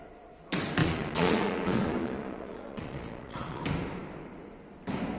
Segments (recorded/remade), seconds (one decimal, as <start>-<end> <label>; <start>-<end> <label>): 0.0-0.8 recorded; 0.8-3.6 remade; 3.6-5.2 recorded